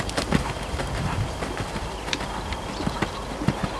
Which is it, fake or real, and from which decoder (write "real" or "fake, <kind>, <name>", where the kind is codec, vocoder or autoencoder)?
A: real